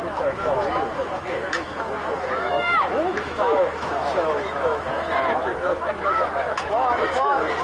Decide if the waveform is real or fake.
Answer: fake